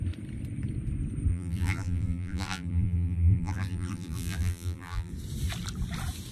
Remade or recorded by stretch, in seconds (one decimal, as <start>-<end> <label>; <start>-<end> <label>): 0.0-1.3 recorded; 1.3-5.1 remade; 5.1-6.3 recorded